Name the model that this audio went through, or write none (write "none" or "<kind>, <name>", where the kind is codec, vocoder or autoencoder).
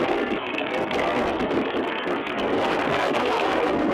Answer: codec, SNAC